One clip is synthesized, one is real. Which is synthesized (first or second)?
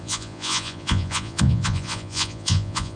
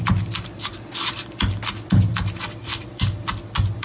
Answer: first